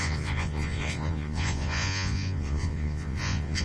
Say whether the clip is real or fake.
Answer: fake